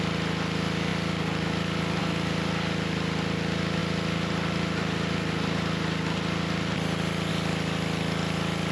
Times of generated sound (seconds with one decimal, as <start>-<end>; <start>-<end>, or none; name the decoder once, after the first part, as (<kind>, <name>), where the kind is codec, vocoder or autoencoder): none